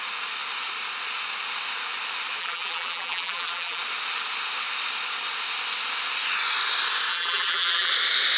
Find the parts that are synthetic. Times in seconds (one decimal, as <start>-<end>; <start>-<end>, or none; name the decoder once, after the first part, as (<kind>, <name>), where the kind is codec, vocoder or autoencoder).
2.4-3.8 (vocoder, BigVGAN v2); 7.1-7.9